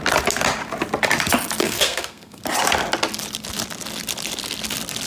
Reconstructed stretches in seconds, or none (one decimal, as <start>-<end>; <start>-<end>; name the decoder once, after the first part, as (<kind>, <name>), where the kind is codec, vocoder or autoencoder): 1.6-2.4 (codec, SNAC)

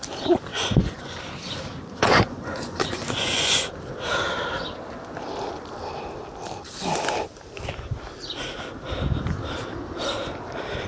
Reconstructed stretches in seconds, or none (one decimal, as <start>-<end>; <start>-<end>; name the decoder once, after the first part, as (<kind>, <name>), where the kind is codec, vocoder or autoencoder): 0.5-1.2 (vocoder, Vocos); 1.8-3.7

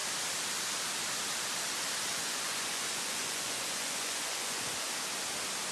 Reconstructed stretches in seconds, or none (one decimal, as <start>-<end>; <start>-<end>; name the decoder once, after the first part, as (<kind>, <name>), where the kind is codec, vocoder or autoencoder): 2.1-4.9 (vocoder, Vocos)

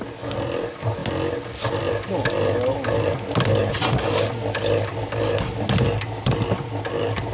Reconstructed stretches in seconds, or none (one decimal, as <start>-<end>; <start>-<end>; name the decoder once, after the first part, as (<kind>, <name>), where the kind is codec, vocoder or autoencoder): 3.6-4.3 (vocoder, BigVGAN v2)

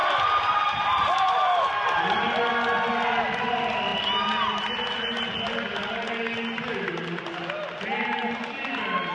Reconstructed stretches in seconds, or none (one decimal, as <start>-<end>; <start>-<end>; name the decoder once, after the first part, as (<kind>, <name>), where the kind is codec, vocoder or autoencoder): none